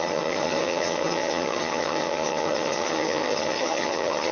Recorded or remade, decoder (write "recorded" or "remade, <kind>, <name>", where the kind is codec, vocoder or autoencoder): remade, vocoder, HiFi-GAN